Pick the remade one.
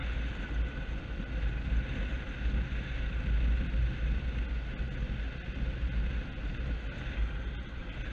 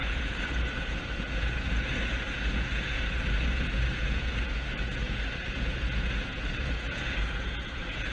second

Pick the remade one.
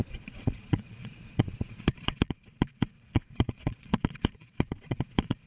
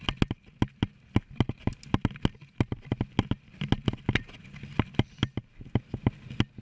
first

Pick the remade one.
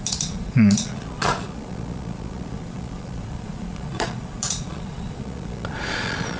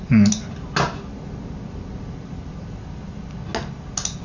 first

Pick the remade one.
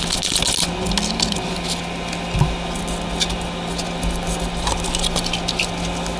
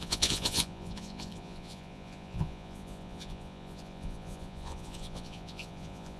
second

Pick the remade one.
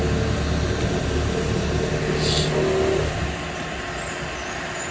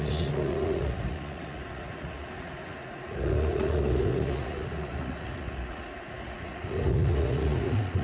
second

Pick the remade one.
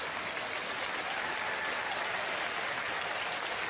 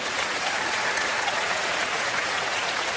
second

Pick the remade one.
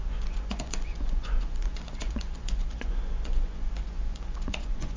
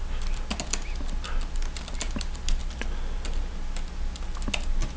first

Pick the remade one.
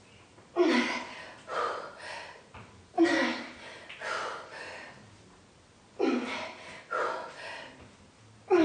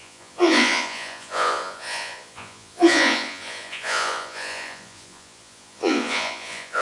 second